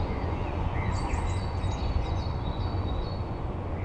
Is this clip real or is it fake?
fake